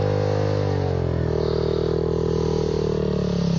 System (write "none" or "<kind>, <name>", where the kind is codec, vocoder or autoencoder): none